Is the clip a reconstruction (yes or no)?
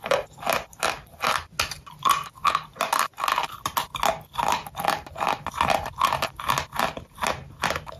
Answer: no